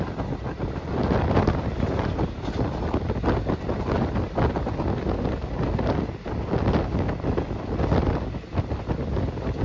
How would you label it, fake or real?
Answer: real